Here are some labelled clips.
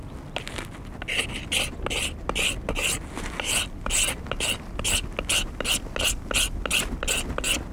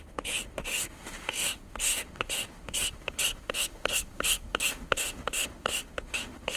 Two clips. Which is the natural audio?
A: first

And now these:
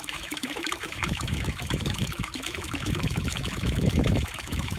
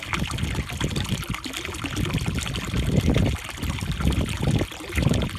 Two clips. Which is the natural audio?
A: second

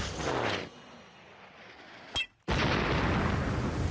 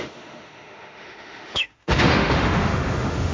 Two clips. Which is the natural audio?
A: first